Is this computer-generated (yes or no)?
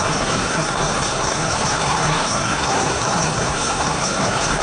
yes